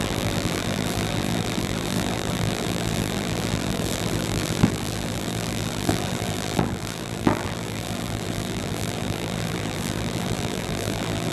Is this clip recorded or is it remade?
remade